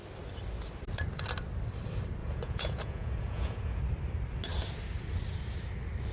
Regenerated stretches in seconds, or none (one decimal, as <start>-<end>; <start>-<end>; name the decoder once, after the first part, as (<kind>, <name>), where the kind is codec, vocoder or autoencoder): 2.2-3.8 (vocoder, Vocos)